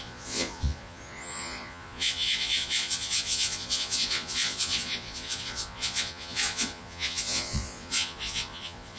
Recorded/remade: remade